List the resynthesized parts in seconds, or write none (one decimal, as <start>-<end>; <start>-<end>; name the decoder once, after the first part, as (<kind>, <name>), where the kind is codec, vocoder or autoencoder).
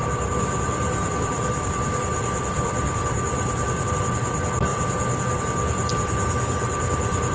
0.0-3.9 (vocoder, BigVGAN v2); 4.7-5.4